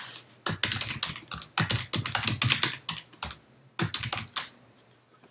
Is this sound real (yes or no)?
yes